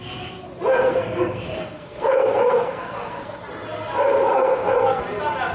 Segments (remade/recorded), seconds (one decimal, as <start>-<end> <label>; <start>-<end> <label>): 0.0-0.7 recorded; 0.7-3.4 remade; 3.4-4.3 recorded; 4.3-5.0 remade; 5.0-5.5 recorded